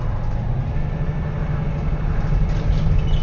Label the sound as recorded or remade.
recorded